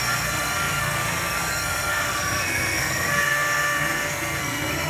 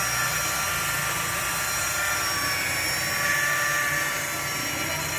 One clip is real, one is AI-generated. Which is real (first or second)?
second